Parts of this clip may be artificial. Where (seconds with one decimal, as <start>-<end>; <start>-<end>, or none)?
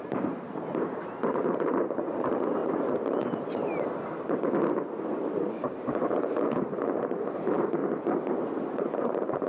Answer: 0.0-2.6; 5.1-7.8; 8.7-9.5